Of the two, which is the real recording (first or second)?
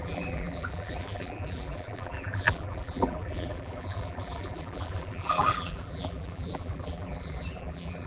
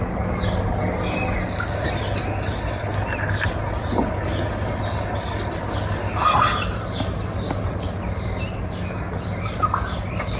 second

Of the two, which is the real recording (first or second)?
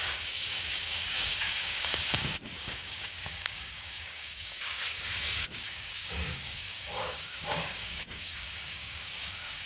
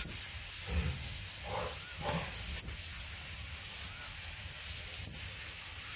second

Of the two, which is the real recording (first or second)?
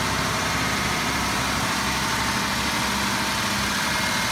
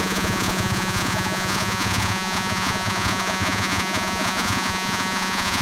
first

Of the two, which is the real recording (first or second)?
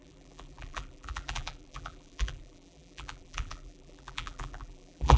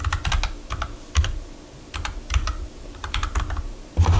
second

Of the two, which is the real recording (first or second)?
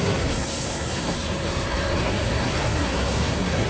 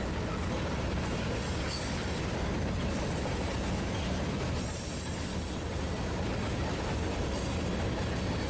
second